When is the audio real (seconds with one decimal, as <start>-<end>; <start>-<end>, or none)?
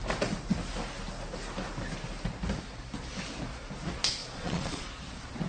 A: 0.0-4.2; 4.9-5.5